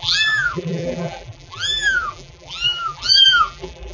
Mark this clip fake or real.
fake